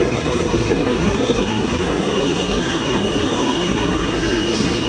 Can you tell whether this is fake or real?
fake